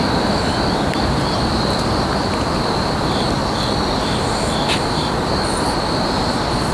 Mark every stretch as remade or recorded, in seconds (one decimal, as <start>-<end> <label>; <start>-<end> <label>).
0.0-3.4 remade; 3.4-6.7 recorded